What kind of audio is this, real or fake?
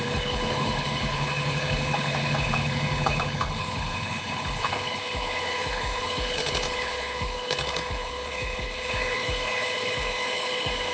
fake